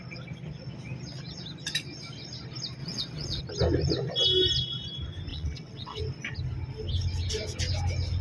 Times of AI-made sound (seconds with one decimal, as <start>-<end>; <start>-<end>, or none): 2.8-3.4; 5.3-6.0